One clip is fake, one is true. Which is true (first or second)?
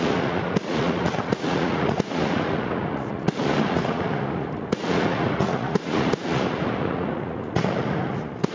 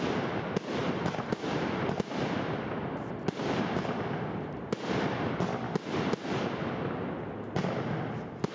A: second